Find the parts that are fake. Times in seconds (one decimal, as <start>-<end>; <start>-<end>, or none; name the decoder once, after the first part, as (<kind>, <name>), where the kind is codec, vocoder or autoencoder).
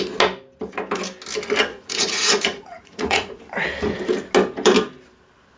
1.7-3.4 (vocoder, Vocos)